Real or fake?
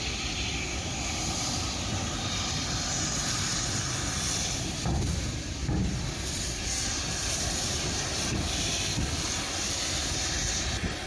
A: real